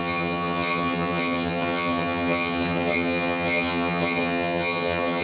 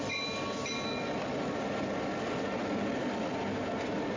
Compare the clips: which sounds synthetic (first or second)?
first